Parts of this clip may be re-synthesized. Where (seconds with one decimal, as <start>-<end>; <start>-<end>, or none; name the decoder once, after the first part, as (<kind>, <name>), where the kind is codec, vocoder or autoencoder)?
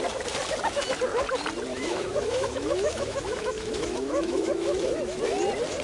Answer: 1.7-5.2 (autoencoder, DAC-VAE)